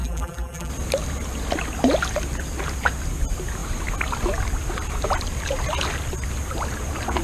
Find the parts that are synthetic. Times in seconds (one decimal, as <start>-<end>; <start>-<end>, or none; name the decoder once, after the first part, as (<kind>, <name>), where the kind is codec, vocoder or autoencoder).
0.0-0.7 (vocoder, BigVGAN v2)